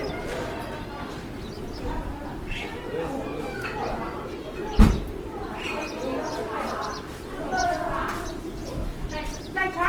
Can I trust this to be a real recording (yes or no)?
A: yes